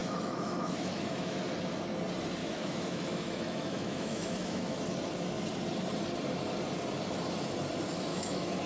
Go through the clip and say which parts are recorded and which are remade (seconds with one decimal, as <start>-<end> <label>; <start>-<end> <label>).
0.0-1.4 remade; 1.4-2.4 recorded; 2.4-4.8 remade; 4.8-8.1 recorded; 8.1-8.7 remade